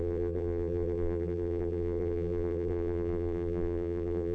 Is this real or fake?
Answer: fake